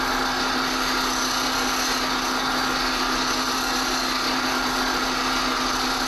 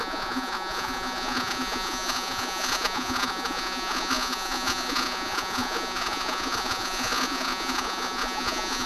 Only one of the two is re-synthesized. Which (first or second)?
second